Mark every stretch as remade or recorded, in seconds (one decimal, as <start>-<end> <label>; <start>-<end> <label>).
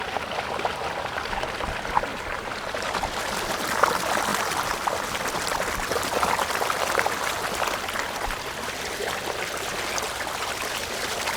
0.0-2.1 recorded; 2.1-3.5 remade; 3.5-4.3 recorded; 4.3-5.2 remade; 5.2-11.4 recorded